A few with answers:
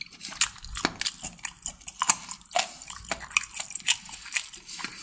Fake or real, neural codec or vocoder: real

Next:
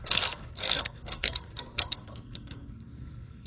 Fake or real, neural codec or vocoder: fake, codec, SNAC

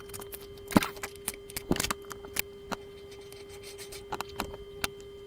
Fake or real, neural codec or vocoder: real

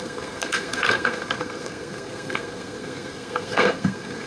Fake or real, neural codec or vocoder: fake, codec, SNAC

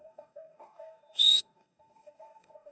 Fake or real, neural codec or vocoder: fake, codec, DAC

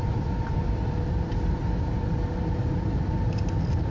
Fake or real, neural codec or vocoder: fake, vocoder, BigVGAN v2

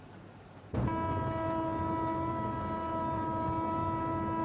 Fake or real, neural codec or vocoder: real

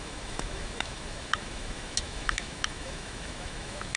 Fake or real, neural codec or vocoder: fake, autoencoder, DAC-VAE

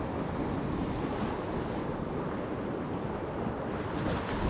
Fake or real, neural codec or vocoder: real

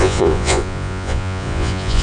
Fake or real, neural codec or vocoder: fake, vocoder, Vocos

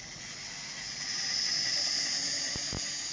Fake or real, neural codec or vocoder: real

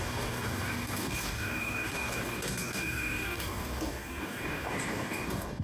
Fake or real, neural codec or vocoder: fake, codec, DAC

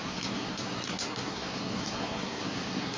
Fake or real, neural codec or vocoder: fake, codec, SNAC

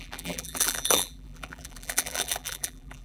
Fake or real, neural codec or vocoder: fake, vocoder, BigVGAN v2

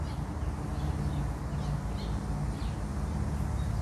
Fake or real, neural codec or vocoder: real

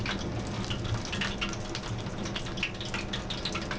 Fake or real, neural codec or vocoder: real